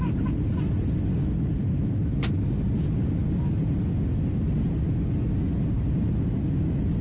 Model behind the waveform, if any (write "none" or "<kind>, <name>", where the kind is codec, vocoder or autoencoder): none